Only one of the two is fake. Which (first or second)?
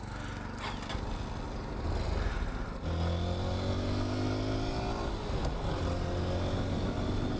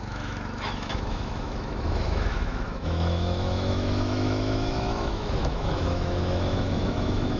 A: second